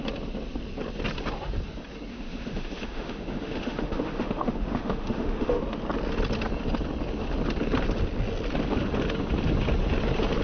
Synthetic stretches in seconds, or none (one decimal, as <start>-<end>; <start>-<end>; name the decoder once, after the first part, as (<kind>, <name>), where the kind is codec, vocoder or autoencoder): 2.1-5.6 (autoencoder, DAC-VAE)